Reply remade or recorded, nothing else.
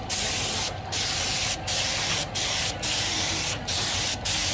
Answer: recorded